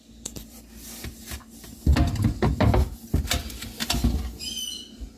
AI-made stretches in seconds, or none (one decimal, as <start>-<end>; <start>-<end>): 0.0-1.9